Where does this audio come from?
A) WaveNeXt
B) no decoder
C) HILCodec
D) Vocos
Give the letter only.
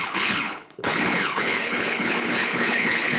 C